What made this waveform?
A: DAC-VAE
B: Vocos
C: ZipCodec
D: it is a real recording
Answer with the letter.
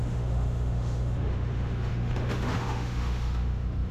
A